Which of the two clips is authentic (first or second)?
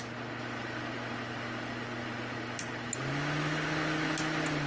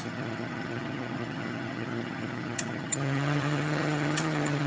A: first